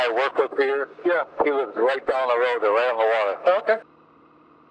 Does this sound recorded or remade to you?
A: recorded